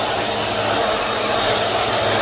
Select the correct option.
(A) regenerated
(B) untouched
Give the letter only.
B